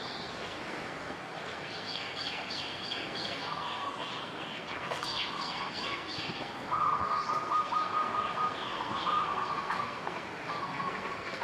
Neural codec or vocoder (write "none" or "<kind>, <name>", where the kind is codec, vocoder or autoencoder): codec, SNAC